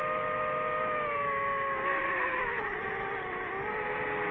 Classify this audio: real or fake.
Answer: real